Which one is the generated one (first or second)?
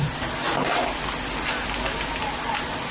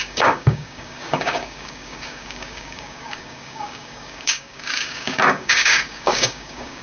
second